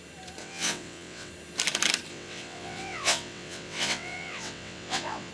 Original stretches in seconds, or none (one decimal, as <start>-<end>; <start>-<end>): 0.0-0.4; 1.3-2.1